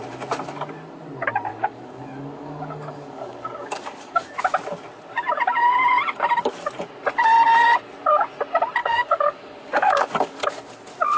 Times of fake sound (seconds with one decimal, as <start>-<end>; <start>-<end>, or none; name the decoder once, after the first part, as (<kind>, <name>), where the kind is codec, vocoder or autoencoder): 1.5-4.4 (codec, DAC); 8.8-10.4